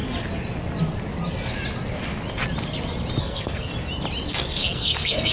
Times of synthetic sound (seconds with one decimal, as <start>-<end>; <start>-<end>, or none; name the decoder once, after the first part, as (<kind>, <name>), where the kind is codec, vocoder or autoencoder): 3.2-3.7 (codec, SNAC); 4.3-5.3